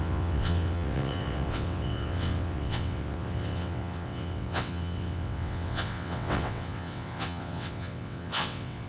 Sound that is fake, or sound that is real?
fake